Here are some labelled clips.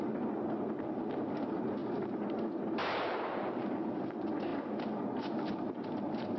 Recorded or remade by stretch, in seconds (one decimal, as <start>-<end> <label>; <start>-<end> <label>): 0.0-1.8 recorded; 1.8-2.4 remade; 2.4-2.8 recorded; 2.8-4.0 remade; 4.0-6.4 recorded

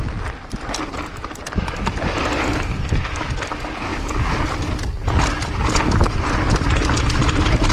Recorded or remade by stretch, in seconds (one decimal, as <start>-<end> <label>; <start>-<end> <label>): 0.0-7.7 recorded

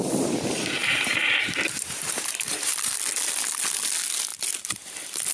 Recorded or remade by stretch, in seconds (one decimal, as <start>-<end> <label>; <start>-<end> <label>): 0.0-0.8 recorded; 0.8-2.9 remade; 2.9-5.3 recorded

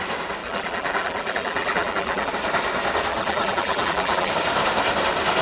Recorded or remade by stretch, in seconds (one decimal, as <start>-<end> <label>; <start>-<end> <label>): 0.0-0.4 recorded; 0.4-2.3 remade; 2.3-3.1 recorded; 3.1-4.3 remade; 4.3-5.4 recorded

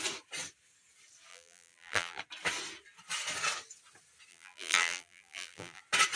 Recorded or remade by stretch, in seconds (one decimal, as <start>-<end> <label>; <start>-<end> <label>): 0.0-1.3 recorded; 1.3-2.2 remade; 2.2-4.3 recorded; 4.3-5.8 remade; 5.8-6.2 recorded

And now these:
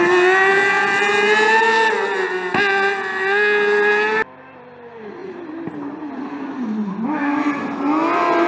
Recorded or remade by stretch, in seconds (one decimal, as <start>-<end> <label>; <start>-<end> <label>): 0.0-8.5 recorded